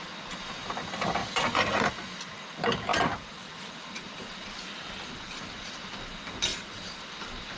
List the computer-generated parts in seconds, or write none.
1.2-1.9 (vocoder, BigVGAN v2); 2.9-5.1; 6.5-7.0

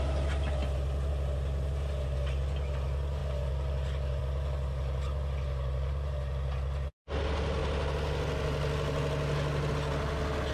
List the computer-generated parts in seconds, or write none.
none

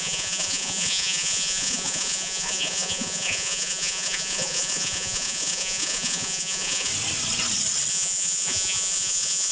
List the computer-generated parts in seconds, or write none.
0.0-6.9 (vocoder, Vocos); 7.9-9.5

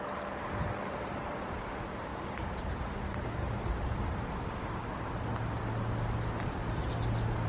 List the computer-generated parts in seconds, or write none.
none

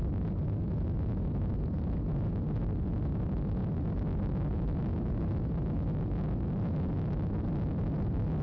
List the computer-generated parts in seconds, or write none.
none

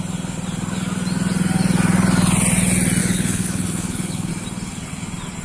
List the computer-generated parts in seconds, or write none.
3.0-4.3 (codec, HILCodec)

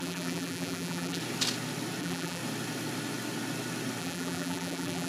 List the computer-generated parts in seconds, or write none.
0.0-1.2 (vocoder, BigVGAN v2); 2.0-2.4; 4.0-5.1